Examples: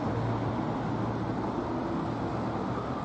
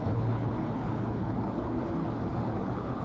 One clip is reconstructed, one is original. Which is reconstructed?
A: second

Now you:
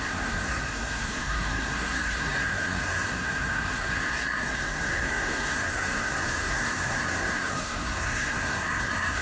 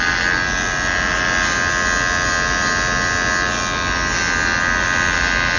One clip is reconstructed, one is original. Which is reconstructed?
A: first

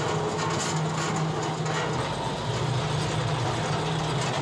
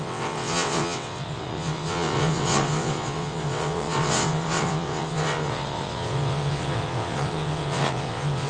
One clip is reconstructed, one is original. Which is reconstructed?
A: second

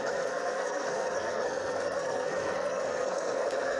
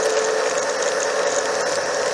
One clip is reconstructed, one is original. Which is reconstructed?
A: first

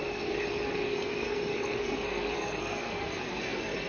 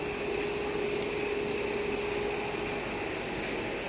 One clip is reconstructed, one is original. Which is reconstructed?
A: first